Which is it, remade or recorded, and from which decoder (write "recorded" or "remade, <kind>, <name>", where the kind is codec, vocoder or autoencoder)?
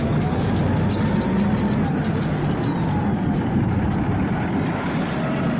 recorded